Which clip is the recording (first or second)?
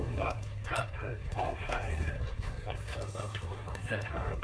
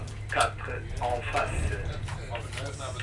second